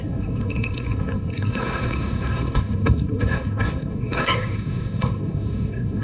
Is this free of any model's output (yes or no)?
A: no